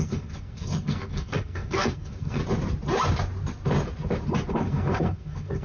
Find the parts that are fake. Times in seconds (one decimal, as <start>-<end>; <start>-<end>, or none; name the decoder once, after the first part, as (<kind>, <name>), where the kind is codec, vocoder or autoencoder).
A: 0.0-2.4 (codec, SNAC); 4.5-5.6